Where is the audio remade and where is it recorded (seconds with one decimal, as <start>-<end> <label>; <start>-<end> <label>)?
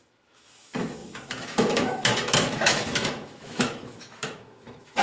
0.0-5.0 remade